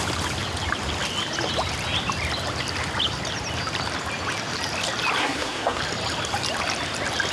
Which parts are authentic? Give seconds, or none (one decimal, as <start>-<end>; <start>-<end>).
0.0-5.2; 5.8-7.3

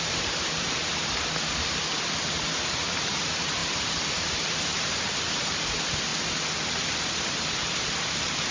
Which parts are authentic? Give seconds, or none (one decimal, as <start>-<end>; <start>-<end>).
1.1-2.3; 6.1-6.8

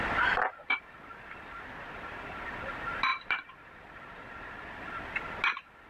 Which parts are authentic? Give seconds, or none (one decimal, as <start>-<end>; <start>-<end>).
0.0-5.9